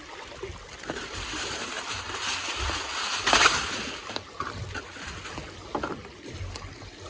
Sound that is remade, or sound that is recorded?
recorded